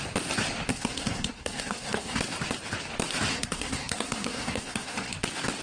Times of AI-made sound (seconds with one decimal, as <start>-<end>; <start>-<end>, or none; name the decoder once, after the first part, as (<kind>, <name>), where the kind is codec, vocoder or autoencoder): 0.7-2.2 (codec, SNAC); 3.3-5.1